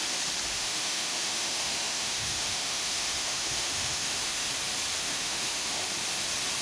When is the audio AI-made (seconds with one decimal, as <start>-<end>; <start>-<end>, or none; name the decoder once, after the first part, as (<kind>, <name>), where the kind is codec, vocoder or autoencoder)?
0.5-4.5 (autoencoder, DAC-VAE); 5.0-5.8